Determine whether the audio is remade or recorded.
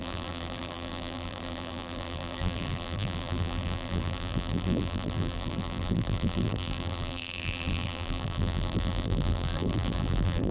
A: remade